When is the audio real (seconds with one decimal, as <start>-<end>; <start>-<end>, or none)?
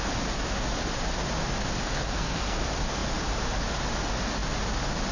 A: 0.0-1.9; 2.6-5.1